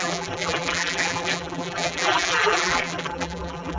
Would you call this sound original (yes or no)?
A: no